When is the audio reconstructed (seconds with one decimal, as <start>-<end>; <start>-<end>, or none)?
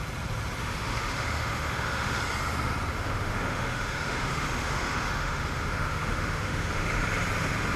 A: 0.6-2.2; 2.9-6.9